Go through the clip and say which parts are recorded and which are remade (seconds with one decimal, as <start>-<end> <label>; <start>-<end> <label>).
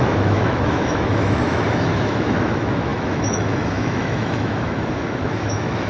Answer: 0.0-5.9 remade